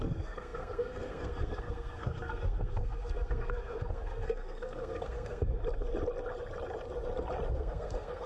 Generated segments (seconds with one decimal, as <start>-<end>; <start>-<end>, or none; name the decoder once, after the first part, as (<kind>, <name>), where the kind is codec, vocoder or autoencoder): 0.0-5.6 (codec, SNAC); 7.5-8.3